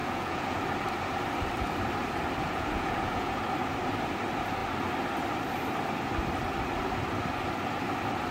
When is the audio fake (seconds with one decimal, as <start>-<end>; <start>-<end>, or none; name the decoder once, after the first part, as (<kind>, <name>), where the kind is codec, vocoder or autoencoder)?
0.0-0.6 (vocoder, Vocos); 2.4-3.4